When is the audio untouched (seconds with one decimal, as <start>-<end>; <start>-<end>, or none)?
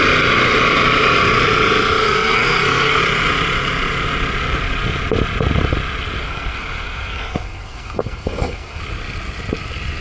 0.0-2.0; 3.0-6.2; 8.8-10.0